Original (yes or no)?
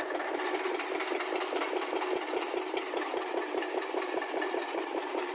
no